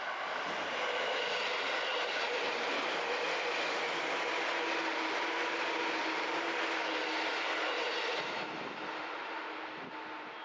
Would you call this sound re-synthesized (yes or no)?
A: no